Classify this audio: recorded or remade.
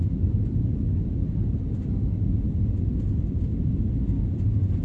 remade